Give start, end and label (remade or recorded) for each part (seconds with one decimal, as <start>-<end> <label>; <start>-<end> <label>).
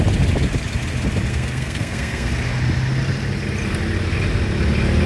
0.0-1.3 recorded; 1.3-2.3 remade; 2.3-5.1 recorded